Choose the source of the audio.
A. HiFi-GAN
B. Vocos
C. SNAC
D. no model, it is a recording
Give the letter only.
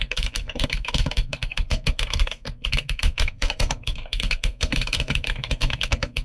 C